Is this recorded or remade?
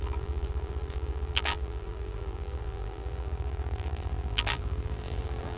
remade